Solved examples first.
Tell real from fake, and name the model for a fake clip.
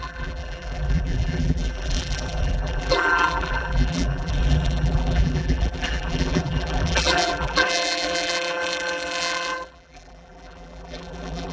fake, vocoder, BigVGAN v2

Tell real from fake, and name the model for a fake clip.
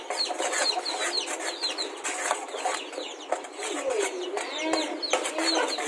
real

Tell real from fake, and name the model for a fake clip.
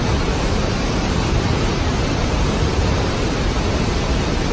fake, vocoder, BigVGAN v2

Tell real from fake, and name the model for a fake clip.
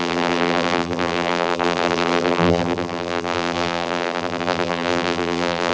fake, vocoder, BigVGAN v2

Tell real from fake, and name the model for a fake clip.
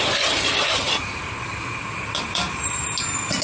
fake, vocoder, BigVGAN v2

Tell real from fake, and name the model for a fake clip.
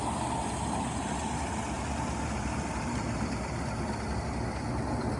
real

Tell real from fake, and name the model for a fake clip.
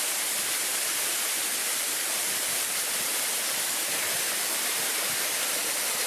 real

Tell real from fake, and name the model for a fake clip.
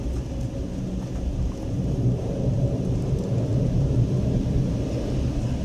real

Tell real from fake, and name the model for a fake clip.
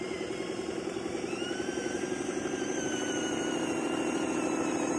fake, vocoder, BigVGAN v2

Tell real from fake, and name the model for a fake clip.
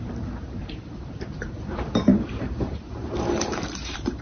fake, vocoder, BigVGAN v2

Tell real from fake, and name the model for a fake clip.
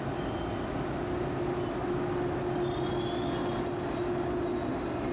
real